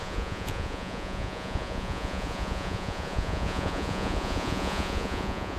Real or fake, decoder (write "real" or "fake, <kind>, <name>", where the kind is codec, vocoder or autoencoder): fake, vocoder, Vocos